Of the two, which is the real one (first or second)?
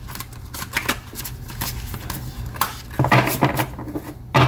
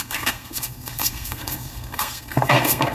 first